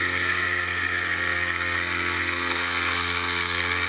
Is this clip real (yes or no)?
no